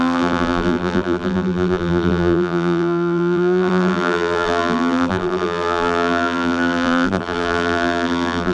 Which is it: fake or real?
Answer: fake